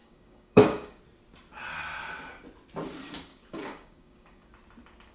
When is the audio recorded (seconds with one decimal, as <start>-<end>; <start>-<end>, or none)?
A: 1.0-3.3; 4.5-5.1